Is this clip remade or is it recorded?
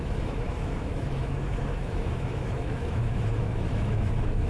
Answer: remade